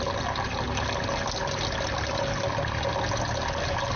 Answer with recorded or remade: recorded